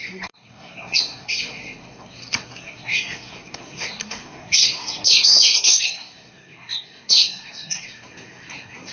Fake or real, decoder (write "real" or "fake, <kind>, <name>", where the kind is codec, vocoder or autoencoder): fake, codec, SNAC